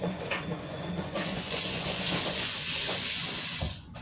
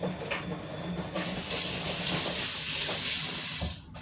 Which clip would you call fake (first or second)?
first